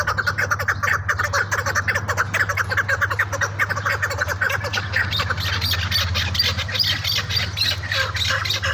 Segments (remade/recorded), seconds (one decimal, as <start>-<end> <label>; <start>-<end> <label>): 0.0-8.7 recorded